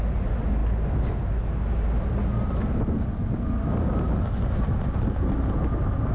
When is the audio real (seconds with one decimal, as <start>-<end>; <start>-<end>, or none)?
0.0-6.1